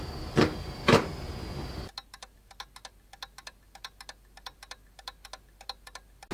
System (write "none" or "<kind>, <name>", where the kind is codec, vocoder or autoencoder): none